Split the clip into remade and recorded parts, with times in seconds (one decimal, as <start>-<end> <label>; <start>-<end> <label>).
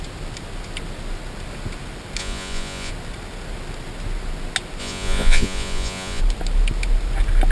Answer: 0.0-2.2 recorded; 2.2-2.9 remade; 2.9-4.8 recorded; 4.8-6.2 remade; 6.2-7.5 recorded